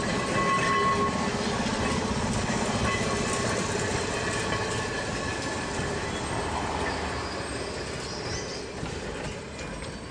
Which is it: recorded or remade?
recorded